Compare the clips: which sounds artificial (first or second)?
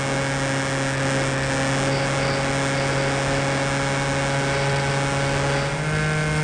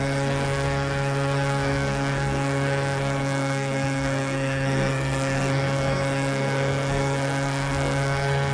second